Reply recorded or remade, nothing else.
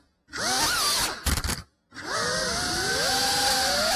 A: recorded